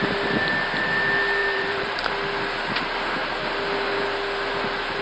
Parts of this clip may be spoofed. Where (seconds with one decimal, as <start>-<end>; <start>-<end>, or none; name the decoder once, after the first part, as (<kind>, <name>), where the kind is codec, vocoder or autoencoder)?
1.4-2.1 (vocoder, BigVGAN v2)